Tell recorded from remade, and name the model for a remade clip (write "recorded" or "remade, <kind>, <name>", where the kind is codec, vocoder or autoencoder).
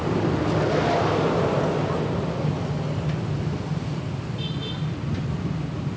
recorded